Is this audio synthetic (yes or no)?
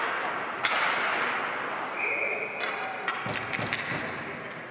no